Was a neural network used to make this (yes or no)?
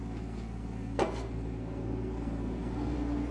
yes